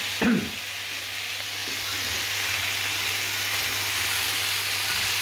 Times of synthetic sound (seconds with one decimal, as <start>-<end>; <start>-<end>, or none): none